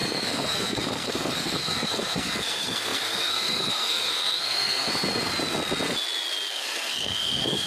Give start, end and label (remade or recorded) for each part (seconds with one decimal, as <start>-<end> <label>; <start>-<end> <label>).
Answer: 0.0-4.9 remade; 4.9-6.5 recorded; 6.5-7.7 remade